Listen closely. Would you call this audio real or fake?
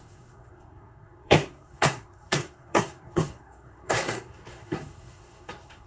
fake